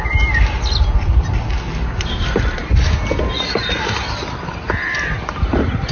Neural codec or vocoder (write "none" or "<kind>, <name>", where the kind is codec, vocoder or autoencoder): none